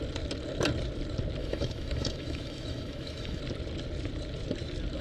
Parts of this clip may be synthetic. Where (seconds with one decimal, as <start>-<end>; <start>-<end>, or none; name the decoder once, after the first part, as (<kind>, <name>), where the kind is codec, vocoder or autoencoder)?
1.4-3.4 (autoencoder, DAC-VAE)